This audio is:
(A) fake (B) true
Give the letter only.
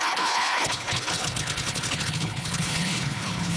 A